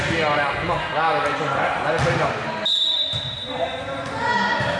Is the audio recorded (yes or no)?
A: yes